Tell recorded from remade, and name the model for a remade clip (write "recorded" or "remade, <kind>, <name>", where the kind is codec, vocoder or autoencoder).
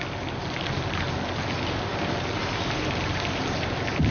recorded